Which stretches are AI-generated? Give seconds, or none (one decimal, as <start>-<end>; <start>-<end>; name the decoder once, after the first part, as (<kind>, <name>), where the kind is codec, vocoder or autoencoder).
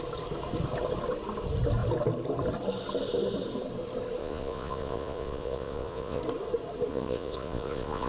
4.2-6.2 (vocoder, Vocos); 6.9-8.1